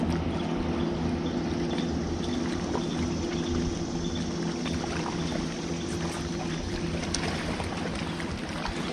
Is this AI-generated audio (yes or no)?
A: no